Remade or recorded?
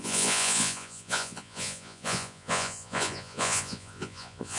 remade